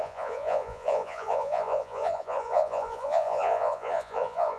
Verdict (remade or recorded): remade